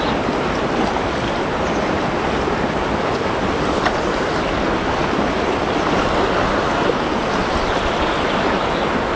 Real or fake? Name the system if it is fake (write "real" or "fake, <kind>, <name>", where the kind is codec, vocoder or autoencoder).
real